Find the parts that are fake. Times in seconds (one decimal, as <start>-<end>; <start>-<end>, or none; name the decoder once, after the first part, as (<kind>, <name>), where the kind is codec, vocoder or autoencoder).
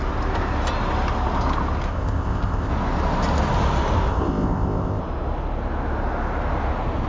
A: 1.9-2.7 (codec, ZipCodec); 4.1-5.0